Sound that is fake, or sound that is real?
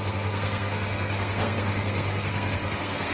fake